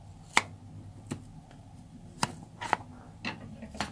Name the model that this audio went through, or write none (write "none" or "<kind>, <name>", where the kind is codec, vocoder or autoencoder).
none